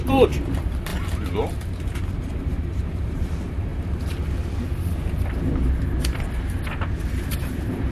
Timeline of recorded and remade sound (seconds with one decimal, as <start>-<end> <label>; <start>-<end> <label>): 0.0-0.9 remade; 0.9-1.8 recorded; 1.8-3.7 remade; 3.7-7.3 recorded; 7.3-7.9 remade